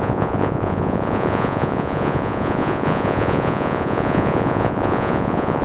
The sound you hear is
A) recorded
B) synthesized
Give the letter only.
B